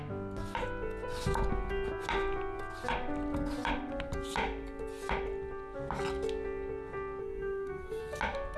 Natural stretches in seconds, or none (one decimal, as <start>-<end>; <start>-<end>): 0.0-7.2; 8.0-8.6